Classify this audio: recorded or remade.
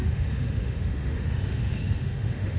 remade